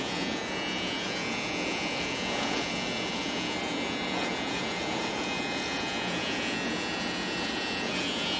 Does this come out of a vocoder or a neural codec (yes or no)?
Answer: yes